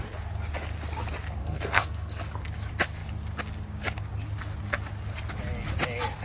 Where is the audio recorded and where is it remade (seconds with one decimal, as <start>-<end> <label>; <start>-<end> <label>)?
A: 0.0-1.4 recorded; 1.4-2.2 remade; 2.2-6.2 recorded